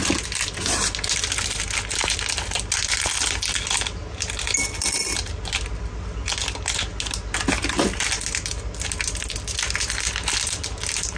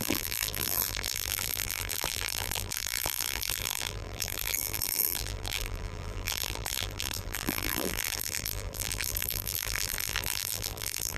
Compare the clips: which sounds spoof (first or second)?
second